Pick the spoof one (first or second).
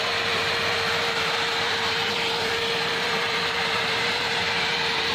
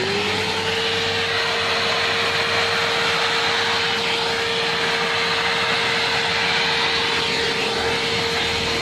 first